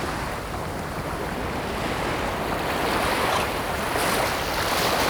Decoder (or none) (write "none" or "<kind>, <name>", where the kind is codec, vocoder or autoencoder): none